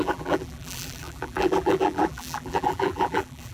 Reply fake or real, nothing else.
fake